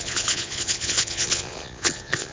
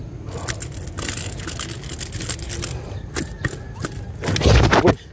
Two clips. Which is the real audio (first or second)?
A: second